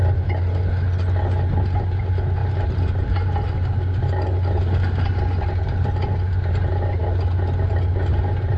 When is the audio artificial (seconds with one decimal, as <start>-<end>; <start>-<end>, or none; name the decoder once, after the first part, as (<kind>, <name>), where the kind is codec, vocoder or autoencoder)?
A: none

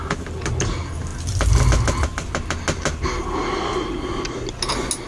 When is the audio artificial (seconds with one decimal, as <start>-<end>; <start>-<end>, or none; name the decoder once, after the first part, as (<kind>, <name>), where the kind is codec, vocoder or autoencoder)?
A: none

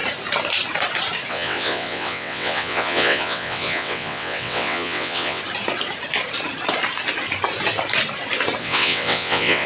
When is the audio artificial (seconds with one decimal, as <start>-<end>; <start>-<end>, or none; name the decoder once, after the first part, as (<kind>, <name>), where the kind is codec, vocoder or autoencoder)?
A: 1.3-5.4 (vocoder, WaveNeXt); 8.6-9.7

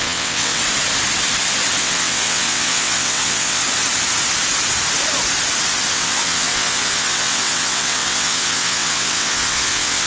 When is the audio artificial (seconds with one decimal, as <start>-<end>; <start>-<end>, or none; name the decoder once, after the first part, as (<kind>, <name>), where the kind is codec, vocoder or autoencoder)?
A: 0.0-0.6 (vocoder, WaveNeXt); 1.8-3.6; 5.9-10.1

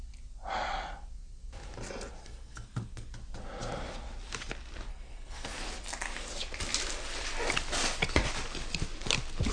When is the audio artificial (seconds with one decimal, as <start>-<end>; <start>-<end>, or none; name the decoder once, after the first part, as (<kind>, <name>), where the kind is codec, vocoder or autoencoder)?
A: 2.2-3.1 (codec, SNAC); 4.9-5.5